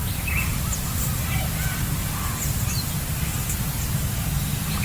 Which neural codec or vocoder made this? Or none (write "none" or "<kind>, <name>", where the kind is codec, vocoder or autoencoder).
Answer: none